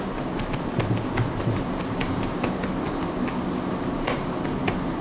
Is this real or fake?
real